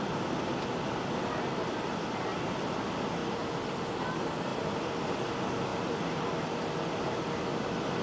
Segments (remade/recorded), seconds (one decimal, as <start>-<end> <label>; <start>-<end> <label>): 0.0-5.7 recorded; 5.7-6.3 remade; 6.3-8.0 recorded